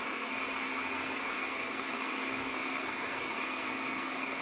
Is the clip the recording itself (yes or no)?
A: no